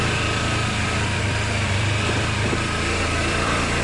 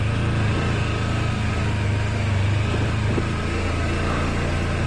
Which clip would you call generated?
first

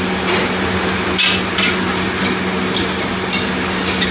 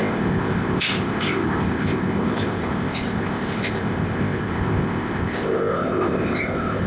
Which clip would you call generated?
second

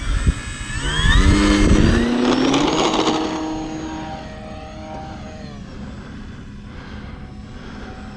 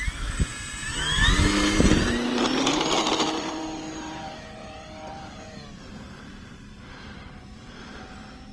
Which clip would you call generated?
second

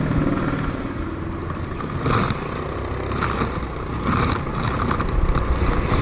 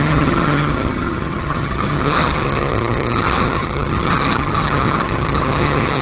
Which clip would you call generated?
second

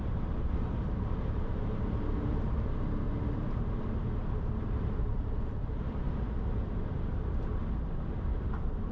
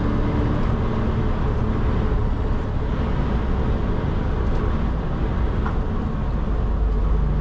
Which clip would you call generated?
first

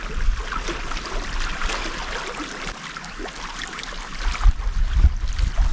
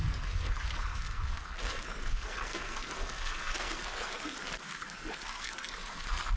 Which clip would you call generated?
second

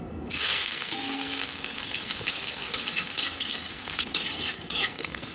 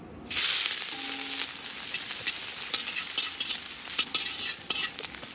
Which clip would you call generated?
first